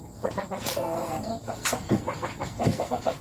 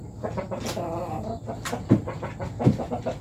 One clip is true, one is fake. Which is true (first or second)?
second